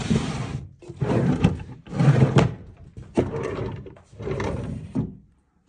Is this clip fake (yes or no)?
yes